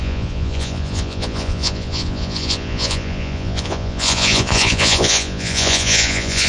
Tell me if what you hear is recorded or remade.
remade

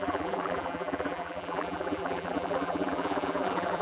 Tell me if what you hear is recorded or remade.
remade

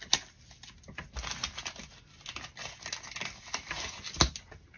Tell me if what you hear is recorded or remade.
recorded